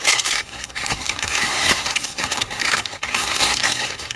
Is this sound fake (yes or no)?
yes